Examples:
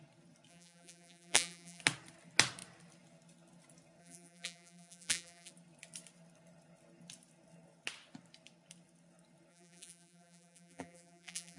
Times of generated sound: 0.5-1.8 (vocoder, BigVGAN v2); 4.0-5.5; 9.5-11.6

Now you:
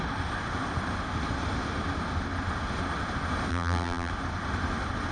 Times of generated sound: 3.5-4.1 (vocoder, BigVGAN v2)

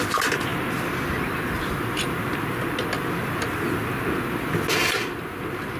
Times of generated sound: none

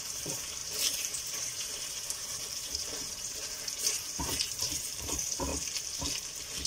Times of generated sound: 0.0-5.5 (vocoder, BigVGAN v2)

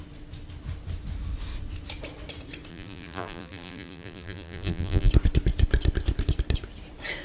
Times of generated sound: 2.7-5.1 (vocoder, BigVGAN v2)

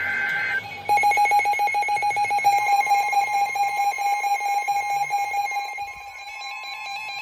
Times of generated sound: 0.0-3.8 (vocoder, BigVGAN v2); 5.3-7.2

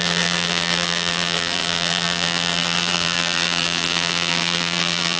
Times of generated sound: 0.0-5.2 (vocoder, BigVGAN v2)

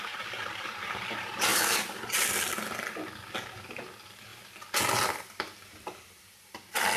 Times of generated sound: 0.0-7.0 (vocoder, BigVGAN v2)